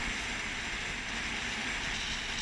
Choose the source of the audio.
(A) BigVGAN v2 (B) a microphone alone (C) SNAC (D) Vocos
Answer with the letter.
B